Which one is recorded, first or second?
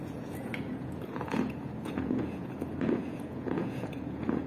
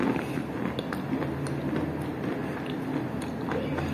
second